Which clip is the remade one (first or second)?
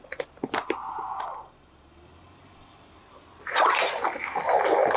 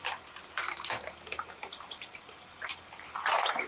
second